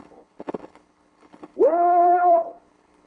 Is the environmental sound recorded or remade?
remade